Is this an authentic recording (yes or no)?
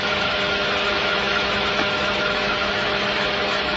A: no